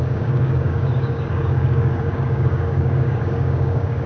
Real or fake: fake